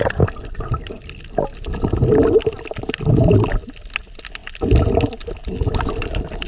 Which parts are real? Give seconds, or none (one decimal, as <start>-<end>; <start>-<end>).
0.0-6.5